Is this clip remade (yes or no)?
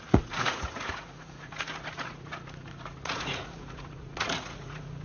yes